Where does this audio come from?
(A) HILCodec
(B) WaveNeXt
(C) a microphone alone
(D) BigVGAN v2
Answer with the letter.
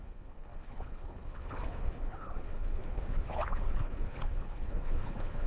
A